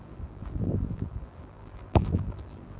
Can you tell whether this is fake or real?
fake